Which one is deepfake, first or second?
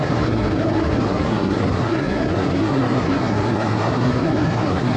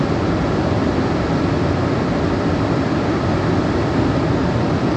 first